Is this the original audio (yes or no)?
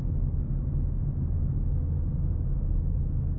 yes